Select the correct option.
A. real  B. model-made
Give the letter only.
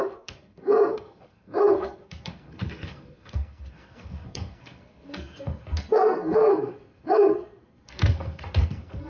B